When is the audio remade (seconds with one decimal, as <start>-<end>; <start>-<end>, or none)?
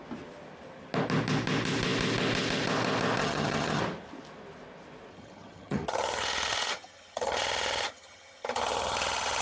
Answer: 3.2-3.8; 5.1-9.4